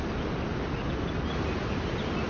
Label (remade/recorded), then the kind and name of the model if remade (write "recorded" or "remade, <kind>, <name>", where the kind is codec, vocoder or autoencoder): recorded